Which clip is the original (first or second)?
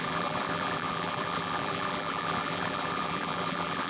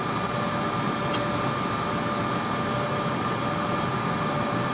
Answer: second